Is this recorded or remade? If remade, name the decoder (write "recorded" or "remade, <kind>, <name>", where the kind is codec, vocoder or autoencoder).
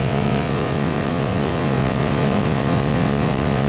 remade, vocoder, WaveNeXt